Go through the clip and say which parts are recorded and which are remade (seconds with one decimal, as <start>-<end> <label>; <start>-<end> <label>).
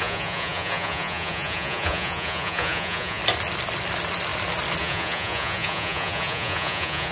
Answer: 0.0-3.2 remade; 3.2-4.8 recorded; 4.8-7.1 remade